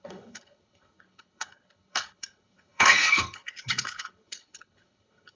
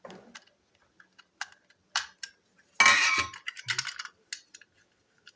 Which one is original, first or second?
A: second